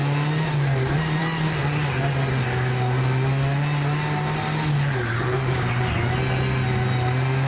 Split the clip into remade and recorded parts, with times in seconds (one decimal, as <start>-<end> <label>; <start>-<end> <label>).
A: 0.0-7.5 recorded